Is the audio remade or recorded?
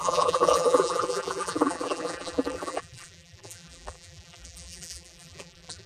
remade